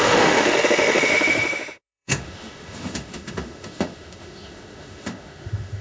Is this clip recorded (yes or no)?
no